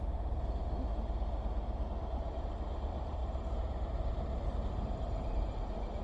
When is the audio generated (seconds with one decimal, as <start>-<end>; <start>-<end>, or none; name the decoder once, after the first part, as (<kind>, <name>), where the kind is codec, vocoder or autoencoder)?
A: 0.0-0.9 (vocoder, BigVGAN v2); 1.9-6.0